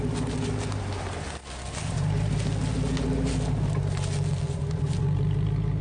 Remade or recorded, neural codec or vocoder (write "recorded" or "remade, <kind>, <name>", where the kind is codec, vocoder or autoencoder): recorded